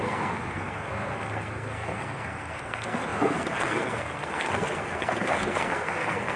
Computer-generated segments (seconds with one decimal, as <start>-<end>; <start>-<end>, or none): 0.0-6.4